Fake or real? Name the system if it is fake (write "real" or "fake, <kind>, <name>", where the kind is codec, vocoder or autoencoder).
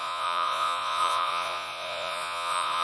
fake, vocoder, Vocos